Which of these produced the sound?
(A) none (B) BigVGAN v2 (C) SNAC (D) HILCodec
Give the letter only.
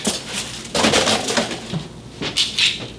A